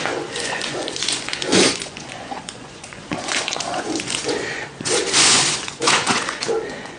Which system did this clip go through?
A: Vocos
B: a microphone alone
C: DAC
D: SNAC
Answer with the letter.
A